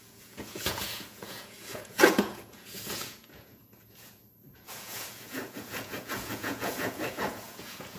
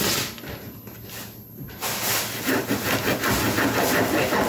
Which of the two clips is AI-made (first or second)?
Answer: first